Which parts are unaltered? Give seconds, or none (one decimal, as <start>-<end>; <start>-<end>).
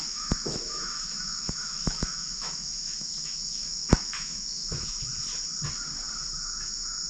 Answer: 5.1-6.4